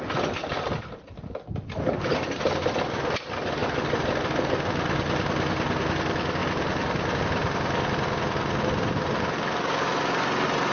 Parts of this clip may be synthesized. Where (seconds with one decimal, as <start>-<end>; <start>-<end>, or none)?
none